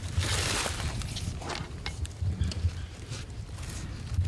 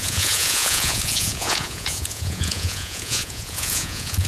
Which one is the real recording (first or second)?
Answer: first